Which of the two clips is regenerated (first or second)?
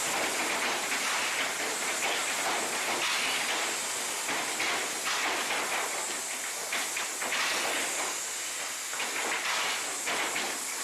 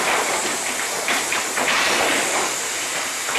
second